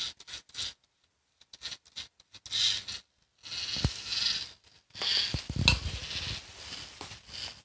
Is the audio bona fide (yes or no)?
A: yes